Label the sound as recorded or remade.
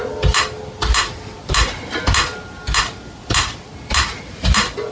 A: recorded